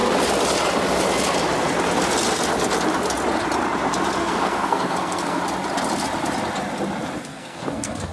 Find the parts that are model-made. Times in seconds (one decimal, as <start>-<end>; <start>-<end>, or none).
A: 4.2-5.4; 7.2-8.1